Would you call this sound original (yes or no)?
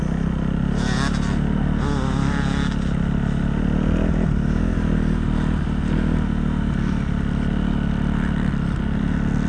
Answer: yes